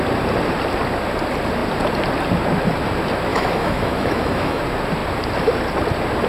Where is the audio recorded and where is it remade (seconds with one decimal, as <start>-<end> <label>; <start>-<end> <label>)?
0.0-3.3 recorded; 3.3-4.6 remade; 4.6-6.3 recorded